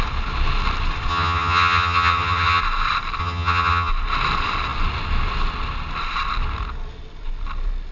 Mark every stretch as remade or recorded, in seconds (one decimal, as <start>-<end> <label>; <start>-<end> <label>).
0.0-1.1 recorded; 1.1-2.6 remade; 2.6-3.2 recorded; 3.2-3.9 remade; 3.9-7.9 recorded